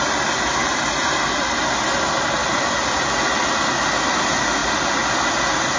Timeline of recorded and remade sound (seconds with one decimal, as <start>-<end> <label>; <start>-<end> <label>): 0.0-5.8 recorded